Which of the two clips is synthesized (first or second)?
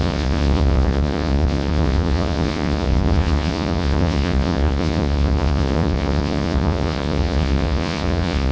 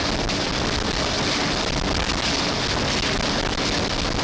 first